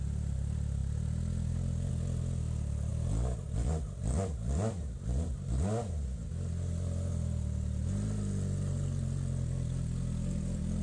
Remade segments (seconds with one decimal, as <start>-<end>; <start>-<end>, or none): none